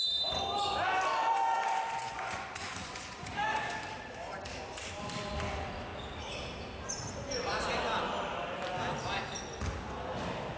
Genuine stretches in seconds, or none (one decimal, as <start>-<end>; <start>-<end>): 0.0-1.1; 3.7-10.6

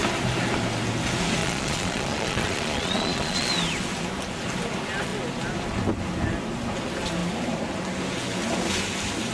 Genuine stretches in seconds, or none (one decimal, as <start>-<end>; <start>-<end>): 0.0-1.4; 3.5-9.3

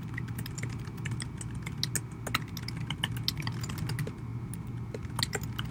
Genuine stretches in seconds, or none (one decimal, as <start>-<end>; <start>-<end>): 0.0-5.7